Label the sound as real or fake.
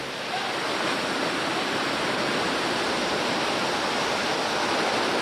real